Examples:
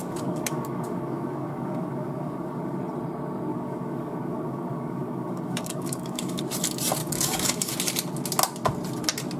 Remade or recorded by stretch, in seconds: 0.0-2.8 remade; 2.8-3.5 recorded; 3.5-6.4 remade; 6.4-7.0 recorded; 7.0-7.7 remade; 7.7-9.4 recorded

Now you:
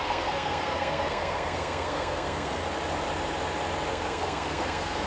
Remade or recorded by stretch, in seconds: 0.0-2.6 remade; 2.6-3.9 recorded; 3.9-5.1 remade

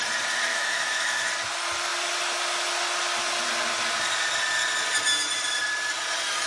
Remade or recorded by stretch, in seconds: 0.0-0.5 recorded; 0.5-1.3 remade; 1.3-6.5 recorded